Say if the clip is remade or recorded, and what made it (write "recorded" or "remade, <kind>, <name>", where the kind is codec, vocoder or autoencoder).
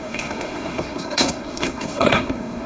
remade, codec, SNAC